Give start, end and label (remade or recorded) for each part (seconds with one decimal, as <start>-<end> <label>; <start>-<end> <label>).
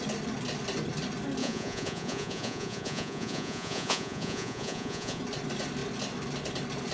0.0-1.4 recorded; 1.4-5.2 remade; 5.2-6.9 recorded